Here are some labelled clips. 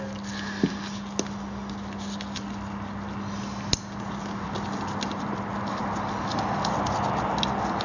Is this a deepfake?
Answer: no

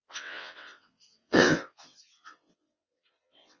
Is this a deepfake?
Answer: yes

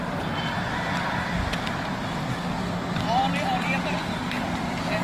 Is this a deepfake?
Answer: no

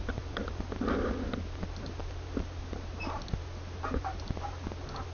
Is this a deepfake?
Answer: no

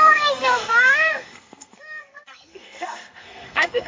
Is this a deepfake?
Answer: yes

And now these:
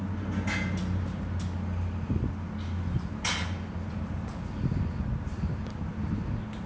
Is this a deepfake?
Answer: no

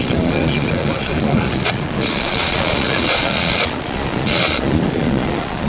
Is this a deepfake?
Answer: yes